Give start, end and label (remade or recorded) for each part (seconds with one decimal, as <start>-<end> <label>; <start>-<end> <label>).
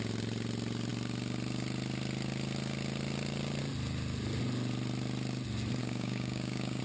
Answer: 0.0-5.8 recorded; 5.8-6.8 remade